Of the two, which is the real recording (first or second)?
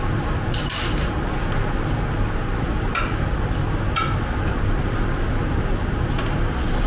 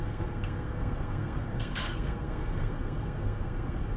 first